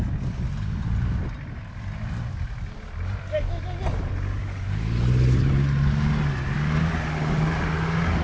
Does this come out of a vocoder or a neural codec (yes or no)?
no